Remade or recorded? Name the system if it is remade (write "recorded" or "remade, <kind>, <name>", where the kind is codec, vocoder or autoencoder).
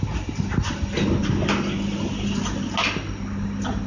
recorded